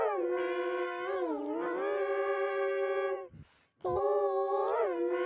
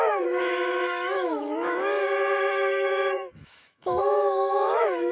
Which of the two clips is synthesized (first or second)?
second